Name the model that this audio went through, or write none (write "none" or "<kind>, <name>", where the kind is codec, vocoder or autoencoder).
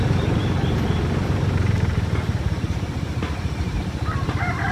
vocoder, BigVGAN v2